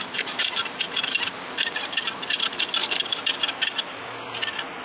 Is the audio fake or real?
fake